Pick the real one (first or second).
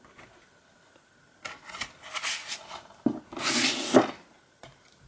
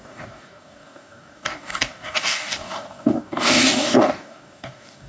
first